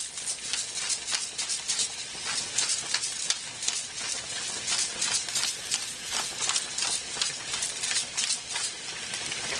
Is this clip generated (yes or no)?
no